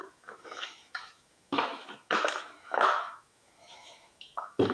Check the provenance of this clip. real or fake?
fake